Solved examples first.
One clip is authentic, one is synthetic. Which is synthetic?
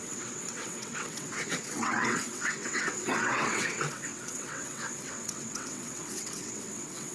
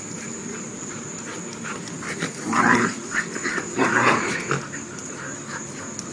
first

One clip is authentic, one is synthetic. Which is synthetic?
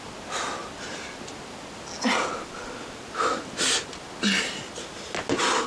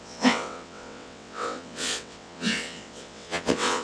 second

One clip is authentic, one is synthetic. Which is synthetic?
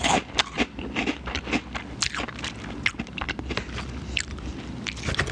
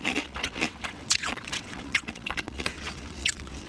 second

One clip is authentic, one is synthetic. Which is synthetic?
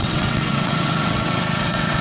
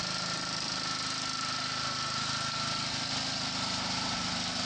first